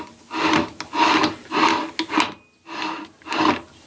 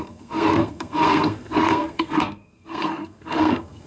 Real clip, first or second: first